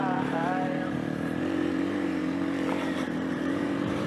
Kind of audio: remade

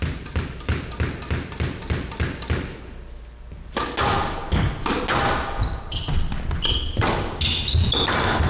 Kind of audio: recorded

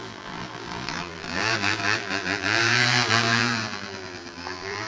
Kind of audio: remade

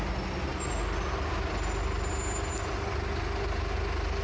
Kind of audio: recorded